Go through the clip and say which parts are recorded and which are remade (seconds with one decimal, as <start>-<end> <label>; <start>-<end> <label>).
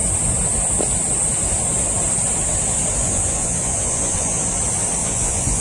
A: 0.0-3.0 recorded; 3.0-4.4 remade; 4.4-5.0 recorded; 5.0-5.6 remade